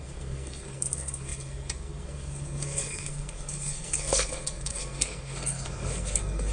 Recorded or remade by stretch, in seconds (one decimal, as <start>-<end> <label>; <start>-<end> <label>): 0.0-6.5 remade